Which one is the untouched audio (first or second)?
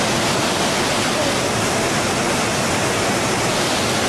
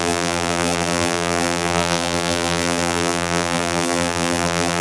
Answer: first